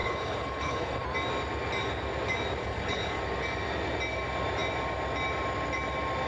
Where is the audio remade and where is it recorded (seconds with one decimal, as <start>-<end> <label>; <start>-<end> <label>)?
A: 0.0-1.0 remade; 1.0-2.6 recorded; 2.6-3.2 remade; 3.2-6.3 recorded